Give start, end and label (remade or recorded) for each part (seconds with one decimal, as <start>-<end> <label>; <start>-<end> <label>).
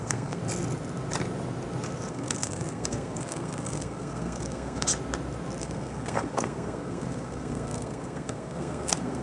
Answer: 0.0-0.4 remade; 0.4-2.1 recorded; 2.1-4.9 remade; 4.9-5.6 recorded; 5.6-9.2 remade